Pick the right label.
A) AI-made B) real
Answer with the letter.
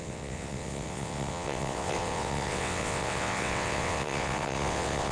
A